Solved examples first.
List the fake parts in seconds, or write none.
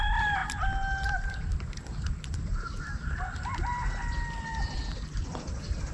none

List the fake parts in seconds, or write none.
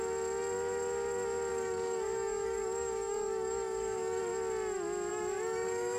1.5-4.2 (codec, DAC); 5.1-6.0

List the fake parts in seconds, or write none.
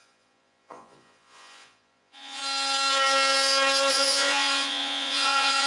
0.0-2.4 (vocoder, Vocos); 3.9-5.7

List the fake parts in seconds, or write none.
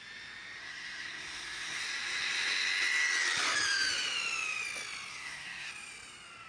0.6-1.8 (codec, SNAC); 5.1-5.7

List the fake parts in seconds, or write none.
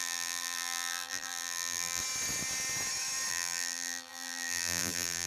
0.0-2.0 (vocoder, BigVGAN v2); 3.3-5.3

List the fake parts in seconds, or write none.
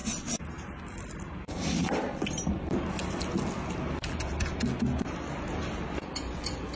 none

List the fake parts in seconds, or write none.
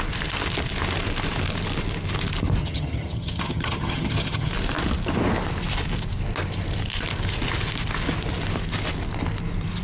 2.6-4.5 (vocoder, HiFi-GAN)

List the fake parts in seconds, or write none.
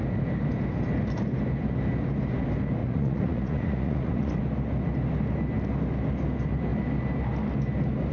2.8-4.4 (vocoder, Vocos)